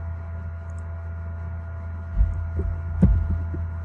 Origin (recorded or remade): recorded